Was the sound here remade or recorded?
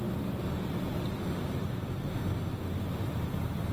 recorded